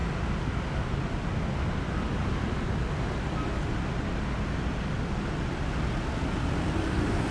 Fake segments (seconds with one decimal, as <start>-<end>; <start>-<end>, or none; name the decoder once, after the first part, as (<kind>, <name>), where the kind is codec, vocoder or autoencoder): none